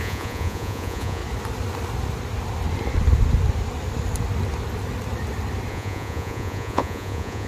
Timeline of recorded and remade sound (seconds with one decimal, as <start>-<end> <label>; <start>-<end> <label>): 0.0-1.2 remade; 1.2-5.7 recorded; 5.7-7.5 remade